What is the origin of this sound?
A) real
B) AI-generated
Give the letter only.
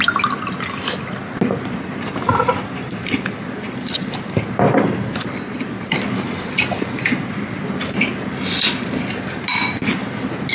A